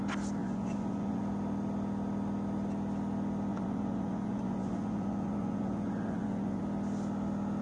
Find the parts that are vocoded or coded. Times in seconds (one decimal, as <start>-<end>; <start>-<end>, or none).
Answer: 0.4-1.2; 3.5-6.6